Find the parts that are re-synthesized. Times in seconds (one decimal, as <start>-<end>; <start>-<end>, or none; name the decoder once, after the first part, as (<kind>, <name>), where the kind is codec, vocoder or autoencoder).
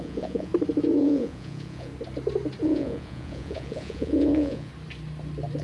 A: 0.0-0.5 (vocoder, Vocos); 1.0-1.9; 2.6-4.7